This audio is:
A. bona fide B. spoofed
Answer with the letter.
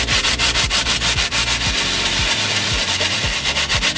B